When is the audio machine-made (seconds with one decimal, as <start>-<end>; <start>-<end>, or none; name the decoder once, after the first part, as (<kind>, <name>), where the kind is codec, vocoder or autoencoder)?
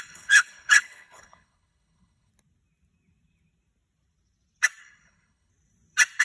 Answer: 0.0-2.3 (codec, HILCodec); 4.8-5.5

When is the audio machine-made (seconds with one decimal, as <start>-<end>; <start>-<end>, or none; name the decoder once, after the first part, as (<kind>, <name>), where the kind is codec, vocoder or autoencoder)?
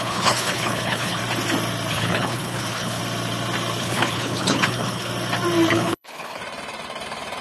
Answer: 0.0-1.2 (codec, HILCodec); 1.9-3.0; 3.8-5.1; 5.7-6.4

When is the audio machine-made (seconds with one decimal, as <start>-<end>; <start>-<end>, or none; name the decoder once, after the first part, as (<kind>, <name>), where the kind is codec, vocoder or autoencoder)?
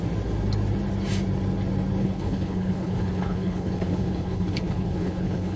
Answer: 2.0-5.6 (codec, HILCodec)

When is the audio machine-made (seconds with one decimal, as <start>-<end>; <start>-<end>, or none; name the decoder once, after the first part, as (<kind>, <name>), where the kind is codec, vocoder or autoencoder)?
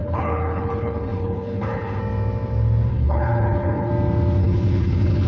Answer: 0.0-2.0 (codec, HILCodec); 2.9-3.9; 4.4-5.3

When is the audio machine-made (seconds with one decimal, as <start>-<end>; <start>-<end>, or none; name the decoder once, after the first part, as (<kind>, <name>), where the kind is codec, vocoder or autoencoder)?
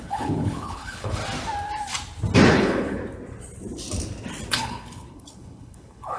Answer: 0.0-1.2 (codec, HILCodec); 2.5-3.0; 4.5-6.2